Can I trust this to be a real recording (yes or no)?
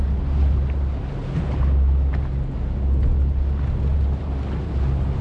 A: yes